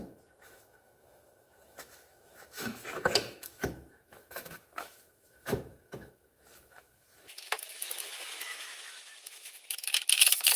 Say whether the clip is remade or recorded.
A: remade